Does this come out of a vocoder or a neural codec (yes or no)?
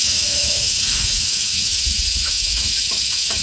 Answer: yes